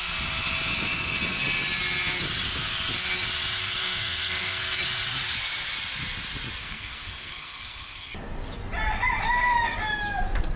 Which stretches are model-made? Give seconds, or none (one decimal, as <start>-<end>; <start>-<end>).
3.6-4.8; 6.6-8.1